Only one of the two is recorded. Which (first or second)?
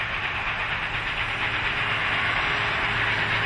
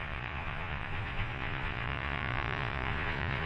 first